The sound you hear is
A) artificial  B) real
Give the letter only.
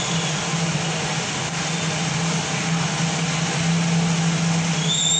B